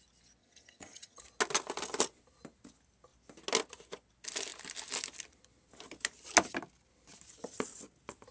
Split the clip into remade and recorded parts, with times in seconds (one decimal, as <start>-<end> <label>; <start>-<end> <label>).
0.0-0.4 recorded; 0.4-1.2 remade; 1.2-8.3 recorded